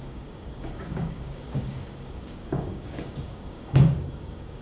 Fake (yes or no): yes